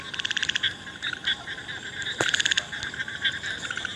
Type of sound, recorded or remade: recorded